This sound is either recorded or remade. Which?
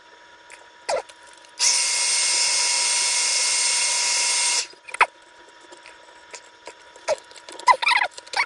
recorded